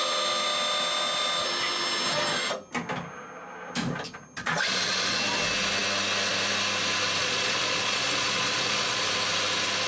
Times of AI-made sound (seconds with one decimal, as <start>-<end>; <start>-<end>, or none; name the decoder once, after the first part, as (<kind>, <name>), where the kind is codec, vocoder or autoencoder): 4.4-5.2 (vocoder, Vocos); 7.2-9.0